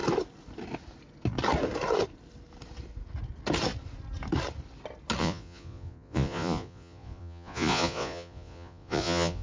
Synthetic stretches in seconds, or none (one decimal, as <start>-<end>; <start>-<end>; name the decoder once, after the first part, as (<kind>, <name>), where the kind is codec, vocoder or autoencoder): 5.2-9.4 (vocoder, Vocos)